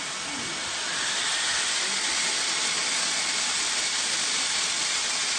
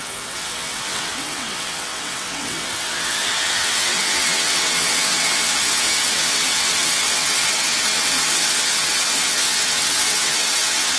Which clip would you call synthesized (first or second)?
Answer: second